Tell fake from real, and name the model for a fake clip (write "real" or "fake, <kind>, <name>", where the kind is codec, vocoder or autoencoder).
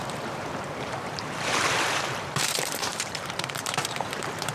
fake, vocoder, BigVGAN v2